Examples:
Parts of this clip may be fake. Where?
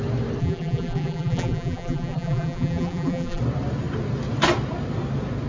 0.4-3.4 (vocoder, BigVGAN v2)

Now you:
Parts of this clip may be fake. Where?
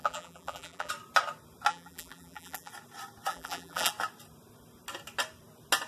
0.0-0.9 (vocoder, BigVGAN v2); 1.7-2.7; 3.3-3.9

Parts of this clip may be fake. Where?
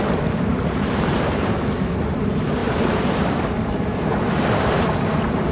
0.0-5.5 (vocoder, BigVGAN v2)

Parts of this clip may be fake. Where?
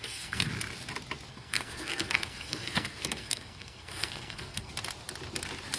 0.0-0.5 (codec, SNAC); 1.3-4.7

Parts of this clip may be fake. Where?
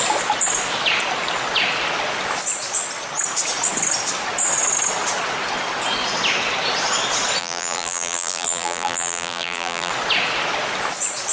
7.4-9.9 (vocoder, BigVGAN v2)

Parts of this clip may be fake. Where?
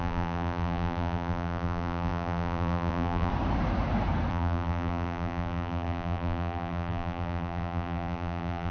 0.0-3.3 (vocoder, BigVGAN v2); 4.3-8.7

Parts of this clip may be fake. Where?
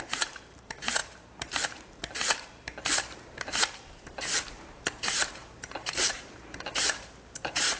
0.0-7.8 (vocoder, BigVGAN v2)